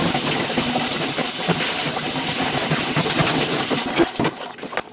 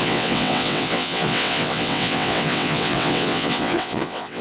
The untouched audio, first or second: first